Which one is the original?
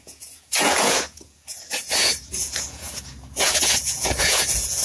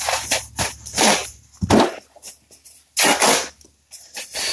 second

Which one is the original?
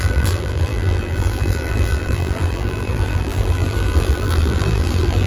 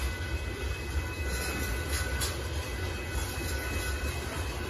second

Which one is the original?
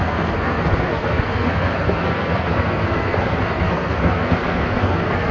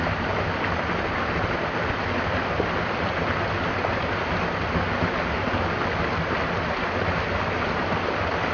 second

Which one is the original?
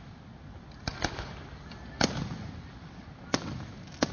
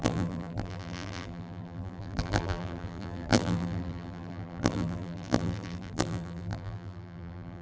first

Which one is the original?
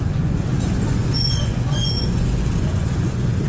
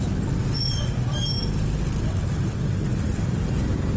second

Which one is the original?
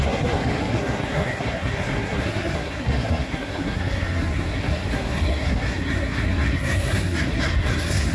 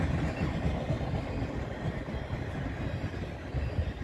second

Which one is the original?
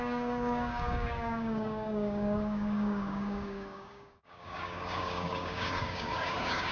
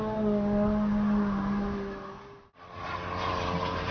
second